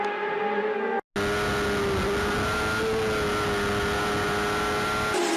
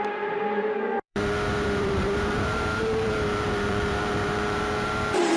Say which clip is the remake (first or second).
second